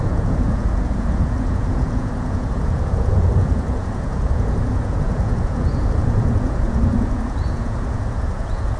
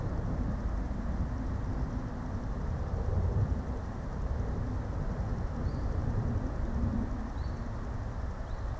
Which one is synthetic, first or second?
first